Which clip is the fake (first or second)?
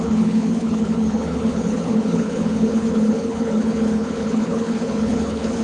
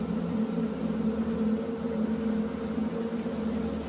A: first